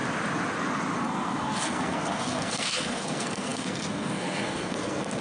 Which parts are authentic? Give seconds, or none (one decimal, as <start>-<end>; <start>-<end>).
0.0-1.0